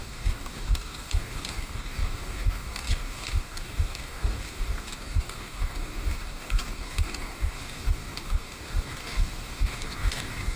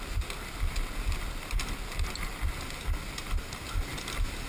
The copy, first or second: first